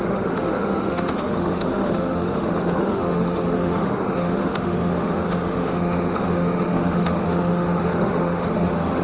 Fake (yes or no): yes